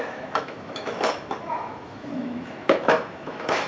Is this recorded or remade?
remade